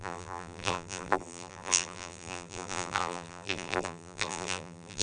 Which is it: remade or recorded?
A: remade